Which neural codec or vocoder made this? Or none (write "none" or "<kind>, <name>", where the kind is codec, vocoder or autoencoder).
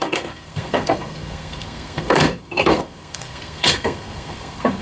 codec, SNAC